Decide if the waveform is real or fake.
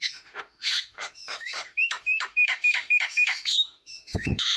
fake